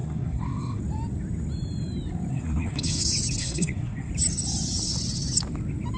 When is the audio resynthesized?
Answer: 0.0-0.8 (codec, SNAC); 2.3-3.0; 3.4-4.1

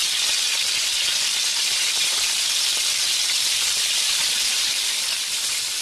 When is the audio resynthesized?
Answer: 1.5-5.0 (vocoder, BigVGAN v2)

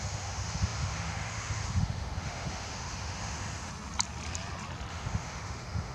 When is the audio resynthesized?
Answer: 0.0-3.7 (autoencoder, DAC-VAE); 4.9-5.9

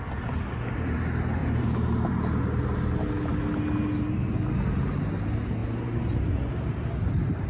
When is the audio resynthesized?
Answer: none

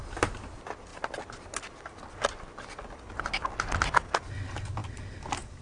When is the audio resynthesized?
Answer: none